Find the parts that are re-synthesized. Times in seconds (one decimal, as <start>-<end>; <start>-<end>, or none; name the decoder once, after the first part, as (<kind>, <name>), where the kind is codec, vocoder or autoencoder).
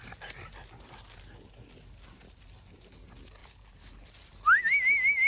none